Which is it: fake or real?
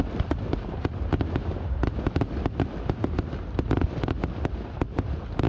real